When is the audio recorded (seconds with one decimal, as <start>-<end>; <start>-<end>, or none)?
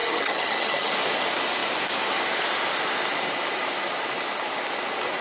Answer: 0.9-5.2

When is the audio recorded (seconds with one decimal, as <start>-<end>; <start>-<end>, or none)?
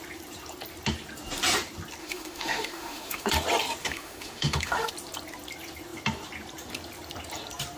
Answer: 0.0-2.0; 3.3-3.8; 4.9-7.8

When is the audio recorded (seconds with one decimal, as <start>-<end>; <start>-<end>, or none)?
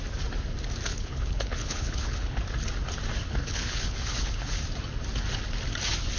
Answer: 0.0-0.9; 2.4-3.2; 4.6-6.2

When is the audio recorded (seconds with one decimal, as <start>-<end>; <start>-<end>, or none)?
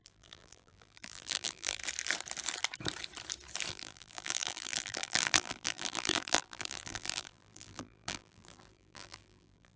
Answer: 1.8-3.7